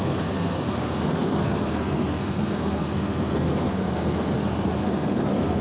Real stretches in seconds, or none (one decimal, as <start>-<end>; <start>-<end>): none